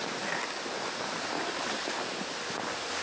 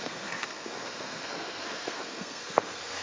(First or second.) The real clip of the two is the first